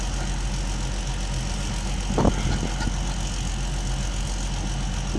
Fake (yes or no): no